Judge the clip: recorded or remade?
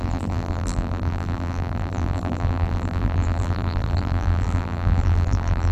remade